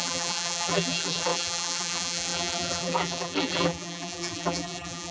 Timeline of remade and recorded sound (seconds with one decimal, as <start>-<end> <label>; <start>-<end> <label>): 0.0-5.1 remade